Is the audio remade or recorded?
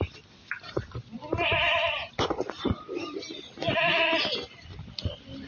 recorded